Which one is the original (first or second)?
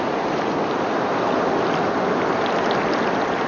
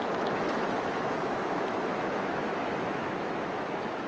first